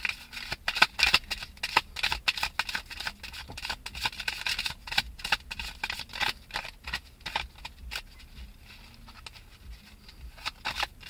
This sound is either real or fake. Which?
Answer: real